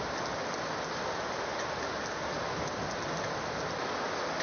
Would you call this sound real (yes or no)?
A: yes